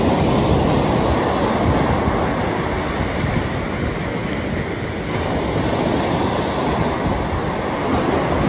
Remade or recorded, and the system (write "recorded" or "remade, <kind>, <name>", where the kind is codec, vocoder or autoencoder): recorded